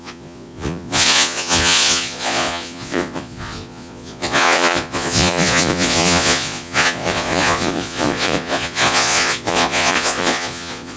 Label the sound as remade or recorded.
remade